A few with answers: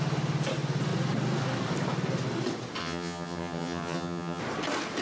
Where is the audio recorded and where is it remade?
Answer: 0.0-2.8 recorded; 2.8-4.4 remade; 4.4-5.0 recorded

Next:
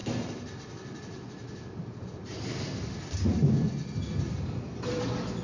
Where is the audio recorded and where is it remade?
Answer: 0.0-5.4 recorded

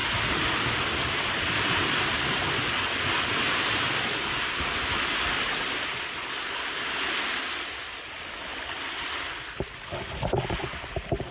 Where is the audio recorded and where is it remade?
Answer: 0.0-11.3 recorded